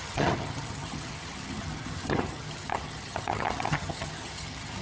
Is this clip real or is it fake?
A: fake